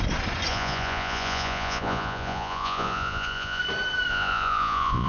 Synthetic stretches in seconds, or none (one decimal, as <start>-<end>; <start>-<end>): 0.5-3.6; 4.1-5.1